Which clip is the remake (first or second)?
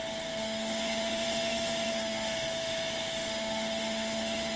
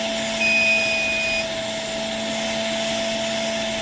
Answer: first